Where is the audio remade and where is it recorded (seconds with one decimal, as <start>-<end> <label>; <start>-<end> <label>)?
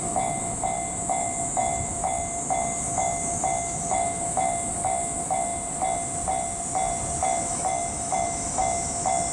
0.0-5.5 remade; 5.5-7.4 recorded; 7.4-9.3 remade